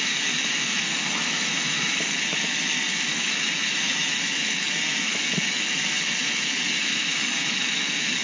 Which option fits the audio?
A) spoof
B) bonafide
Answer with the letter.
A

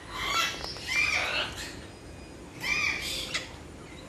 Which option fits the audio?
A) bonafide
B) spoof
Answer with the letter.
A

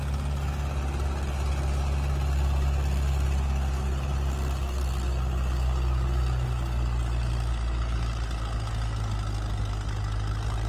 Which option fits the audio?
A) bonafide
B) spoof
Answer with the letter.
A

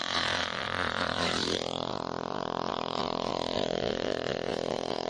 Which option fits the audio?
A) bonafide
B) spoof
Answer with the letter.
B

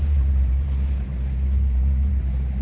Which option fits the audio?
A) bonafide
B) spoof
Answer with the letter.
B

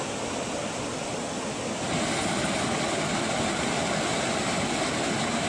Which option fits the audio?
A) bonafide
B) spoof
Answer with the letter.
A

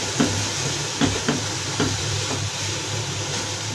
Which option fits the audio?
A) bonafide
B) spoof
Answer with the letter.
B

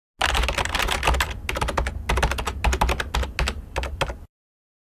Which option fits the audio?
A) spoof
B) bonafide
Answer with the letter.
B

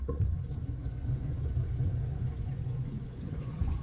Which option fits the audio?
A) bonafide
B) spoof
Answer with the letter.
B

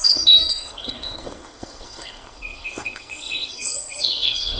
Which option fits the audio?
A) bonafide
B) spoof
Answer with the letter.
B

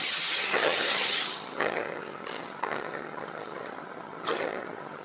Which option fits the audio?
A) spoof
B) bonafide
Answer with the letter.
A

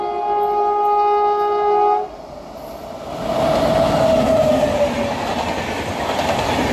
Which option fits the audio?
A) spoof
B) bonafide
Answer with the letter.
B